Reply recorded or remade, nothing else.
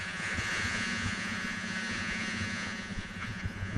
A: remade